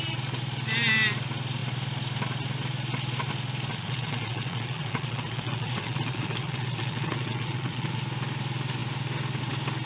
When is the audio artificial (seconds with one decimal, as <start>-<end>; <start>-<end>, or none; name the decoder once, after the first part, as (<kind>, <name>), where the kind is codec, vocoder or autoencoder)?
3.7-8.0 (vocoder, Vocos)